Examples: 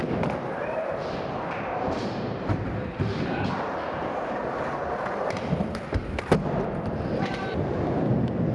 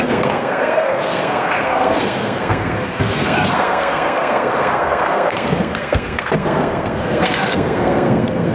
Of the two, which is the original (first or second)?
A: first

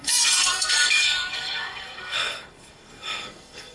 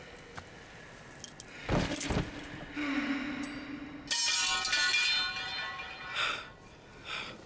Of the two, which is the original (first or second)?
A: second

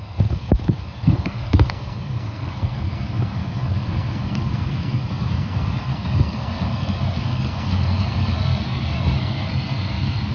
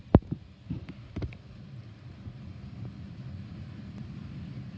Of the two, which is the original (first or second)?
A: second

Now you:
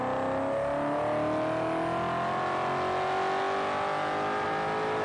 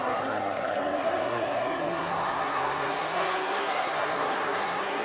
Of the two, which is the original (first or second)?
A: first